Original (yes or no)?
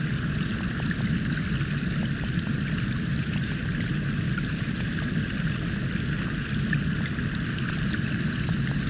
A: yes